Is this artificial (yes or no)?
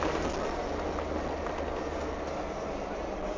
no